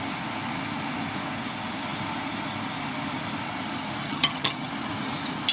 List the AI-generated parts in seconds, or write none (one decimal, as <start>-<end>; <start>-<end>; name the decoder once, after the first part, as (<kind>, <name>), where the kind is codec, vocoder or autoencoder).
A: 4.0-4.7 (vocoder, HiFi-GAN)